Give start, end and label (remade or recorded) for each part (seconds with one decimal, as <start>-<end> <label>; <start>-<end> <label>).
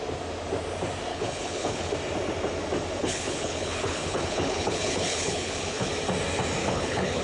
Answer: 0.0-1.1 recorded; 1.1-1.9 remade; 1.9-3.0 recorded; 3.0-5.9 remade; 5.9-6.6 recorded; 6.6-7.2 remade